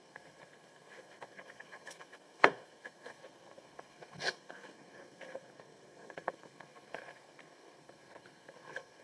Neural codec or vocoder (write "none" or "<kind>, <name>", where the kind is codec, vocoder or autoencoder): codec, SNAC